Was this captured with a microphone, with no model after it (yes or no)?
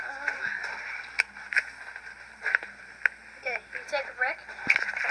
no